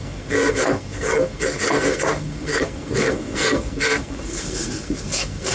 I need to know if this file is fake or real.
fake